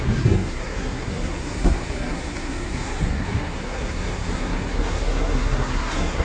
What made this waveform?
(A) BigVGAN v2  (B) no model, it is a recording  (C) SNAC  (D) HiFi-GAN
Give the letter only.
C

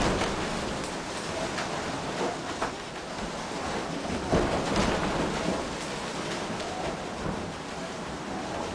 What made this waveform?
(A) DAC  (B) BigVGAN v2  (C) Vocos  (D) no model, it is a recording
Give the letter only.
D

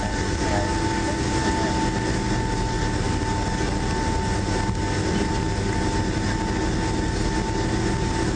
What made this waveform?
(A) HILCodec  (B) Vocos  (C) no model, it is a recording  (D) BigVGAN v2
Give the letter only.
C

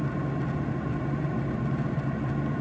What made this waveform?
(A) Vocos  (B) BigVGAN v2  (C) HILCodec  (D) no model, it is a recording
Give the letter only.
D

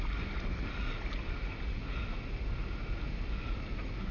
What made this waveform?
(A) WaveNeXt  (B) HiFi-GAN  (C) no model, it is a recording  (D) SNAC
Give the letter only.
C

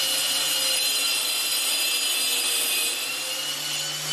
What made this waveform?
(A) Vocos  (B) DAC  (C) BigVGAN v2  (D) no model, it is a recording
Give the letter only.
D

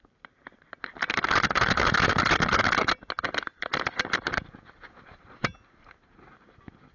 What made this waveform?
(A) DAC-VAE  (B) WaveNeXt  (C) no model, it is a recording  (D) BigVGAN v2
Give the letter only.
C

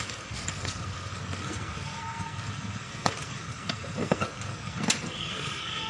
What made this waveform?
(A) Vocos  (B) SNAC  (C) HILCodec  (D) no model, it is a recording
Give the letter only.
B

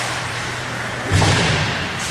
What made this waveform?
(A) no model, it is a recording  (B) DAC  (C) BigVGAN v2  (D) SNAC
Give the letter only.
C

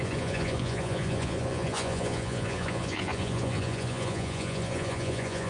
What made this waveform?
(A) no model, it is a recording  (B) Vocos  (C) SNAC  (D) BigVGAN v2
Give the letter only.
B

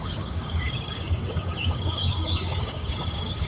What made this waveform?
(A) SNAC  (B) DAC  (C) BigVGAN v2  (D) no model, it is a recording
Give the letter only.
B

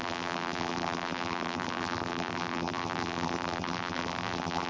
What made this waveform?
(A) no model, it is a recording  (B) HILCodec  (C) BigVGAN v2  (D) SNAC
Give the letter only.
C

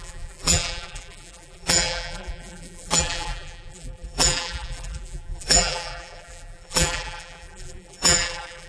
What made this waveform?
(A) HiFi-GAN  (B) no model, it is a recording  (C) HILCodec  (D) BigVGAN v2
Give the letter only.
D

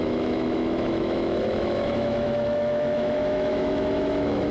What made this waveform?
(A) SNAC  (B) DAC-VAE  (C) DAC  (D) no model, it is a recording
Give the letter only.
B